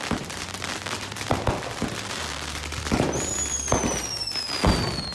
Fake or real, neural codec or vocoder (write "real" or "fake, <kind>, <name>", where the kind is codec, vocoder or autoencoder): real